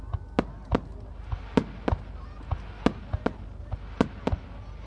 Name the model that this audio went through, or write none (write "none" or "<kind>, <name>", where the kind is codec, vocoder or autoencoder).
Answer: none